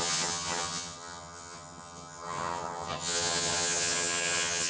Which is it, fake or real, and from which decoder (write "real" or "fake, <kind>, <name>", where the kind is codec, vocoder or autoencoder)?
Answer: fake, vocoder, HiFi-GAN